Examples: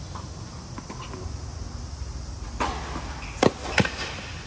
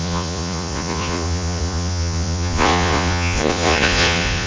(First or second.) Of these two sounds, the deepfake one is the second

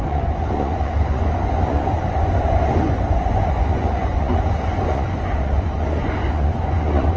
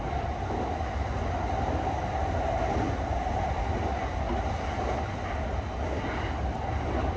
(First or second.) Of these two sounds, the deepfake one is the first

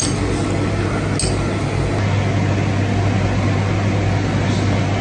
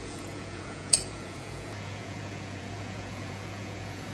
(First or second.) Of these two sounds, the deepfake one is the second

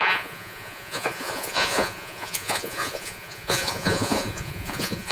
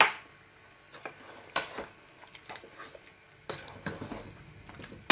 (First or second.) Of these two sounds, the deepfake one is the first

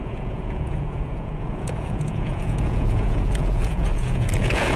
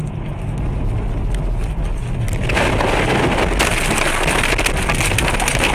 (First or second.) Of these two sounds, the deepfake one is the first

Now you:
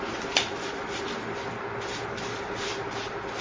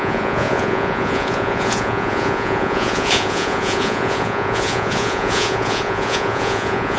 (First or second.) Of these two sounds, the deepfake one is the second